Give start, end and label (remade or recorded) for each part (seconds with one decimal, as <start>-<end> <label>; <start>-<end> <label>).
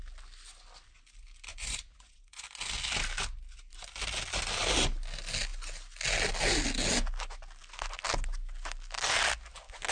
0.0-1.5 recorded; 1.5-2.4 remade; 2.4-9.9 recorded